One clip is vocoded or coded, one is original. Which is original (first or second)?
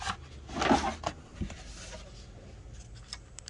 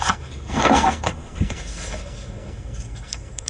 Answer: first